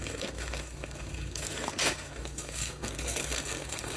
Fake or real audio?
fake